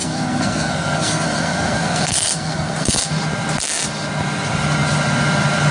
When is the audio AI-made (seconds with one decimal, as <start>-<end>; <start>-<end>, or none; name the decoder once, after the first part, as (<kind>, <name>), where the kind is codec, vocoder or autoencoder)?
0.0-3.1 (codec, SNAC)